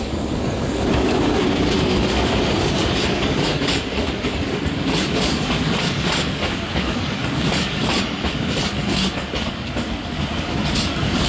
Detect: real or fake fake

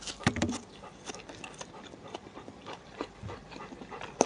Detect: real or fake fake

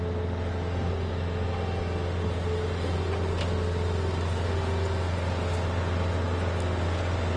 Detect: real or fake real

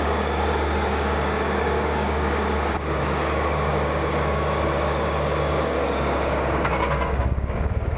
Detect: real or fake fake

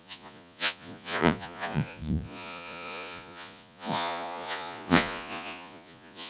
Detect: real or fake fake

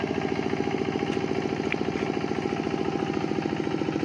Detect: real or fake real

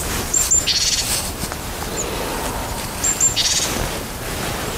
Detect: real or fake real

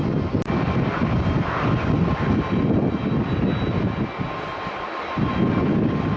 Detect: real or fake real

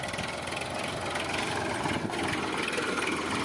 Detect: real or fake real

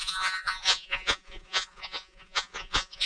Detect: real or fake fake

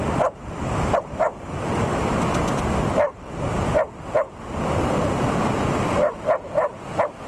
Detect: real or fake real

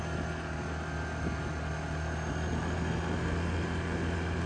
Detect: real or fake real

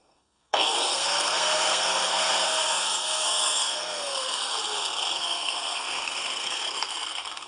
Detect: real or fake fake